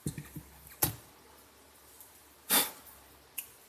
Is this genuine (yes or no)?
yes